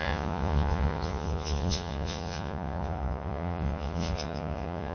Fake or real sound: fake